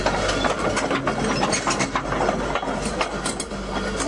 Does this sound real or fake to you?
real